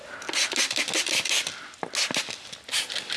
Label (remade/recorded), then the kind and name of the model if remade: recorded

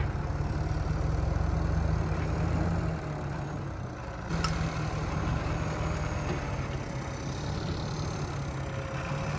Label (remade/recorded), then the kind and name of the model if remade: recorded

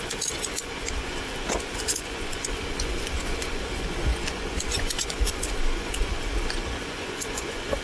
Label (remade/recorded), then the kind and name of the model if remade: remade, vocoder, Vocos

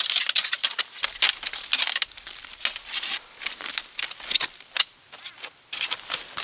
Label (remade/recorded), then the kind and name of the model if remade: recorded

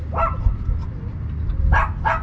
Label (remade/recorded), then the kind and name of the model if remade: recorded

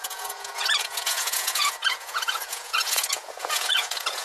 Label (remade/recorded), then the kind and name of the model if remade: remade, vocoder, Vocos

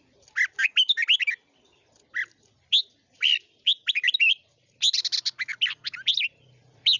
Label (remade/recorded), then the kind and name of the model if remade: recorded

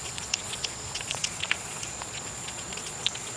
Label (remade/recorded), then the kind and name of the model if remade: remade, vocoder, Vocos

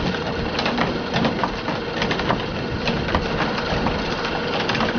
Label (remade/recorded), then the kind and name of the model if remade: recorded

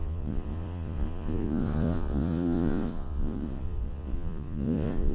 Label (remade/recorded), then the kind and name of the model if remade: remade, vocoder, Vocos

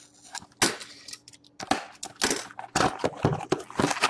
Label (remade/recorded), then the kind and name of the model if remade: recorded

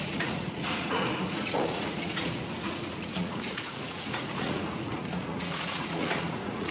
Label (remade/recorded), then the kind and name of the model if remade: remade, vocoder, Vocos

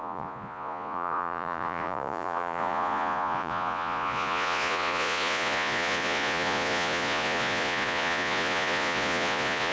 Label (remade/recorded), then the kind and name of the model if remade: remade, vocoder, Vocos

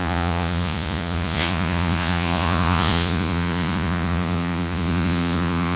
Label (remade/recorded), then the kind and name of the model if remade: remade, vocoder, Vocos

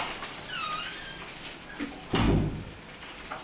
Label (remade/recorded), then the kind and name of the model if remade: recorded